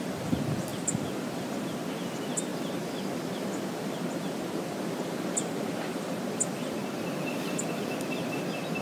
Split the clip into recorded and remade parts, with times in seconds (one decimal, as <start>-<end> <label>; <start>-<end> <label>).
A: 0.0-6.8 remade; 6.8-8.8 recorded